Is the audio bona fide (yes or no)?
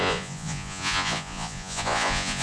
no